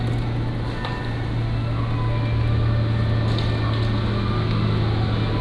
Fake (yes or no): no